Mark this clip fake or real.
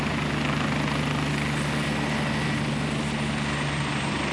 real